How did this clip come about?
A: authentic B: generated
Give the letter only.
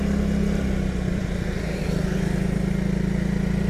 A